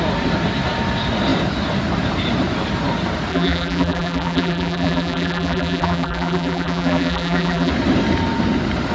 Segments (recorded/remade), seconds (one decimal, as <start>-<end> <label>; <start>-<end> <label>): 0.0-3.3 recorded; 3.3-7.7 remade; 7.7-8.9 recorded